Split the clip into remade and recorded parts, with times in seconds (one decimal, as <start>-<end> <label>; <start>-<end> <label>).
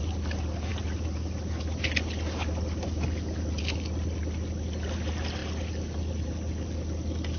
0.0-7.4 recorded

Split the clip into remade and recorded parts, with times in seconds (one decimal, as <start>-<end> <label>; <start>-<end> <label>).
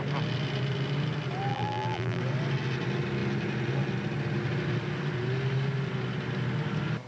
0.0-1.5 recorded; 1.5-2.2 remade; 2.2-7.1 recorded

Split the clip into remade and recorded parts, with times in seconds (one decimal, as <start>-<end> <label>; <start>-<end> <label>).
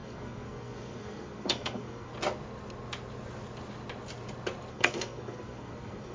0.0-2.1 remade; 2.1-4.7 recorded; 4.7-6.1 remade